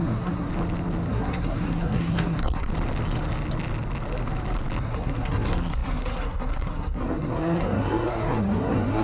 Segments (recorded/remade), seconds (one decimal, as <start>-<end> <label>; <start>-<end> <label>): 0.0-0.5 remade; 0.5-1.1 recorded; 1.1-2.7 remade; 2.7-4.8 recorded; 4.8-9.0 remade